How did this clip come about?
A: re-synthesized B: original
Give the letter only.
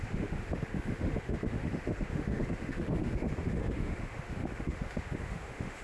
A